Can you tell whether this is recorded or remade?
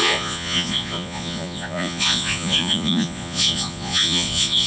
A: remade